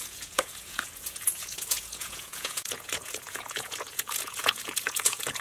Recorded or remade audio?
remade